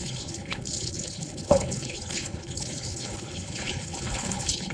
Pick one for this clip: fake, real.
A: fake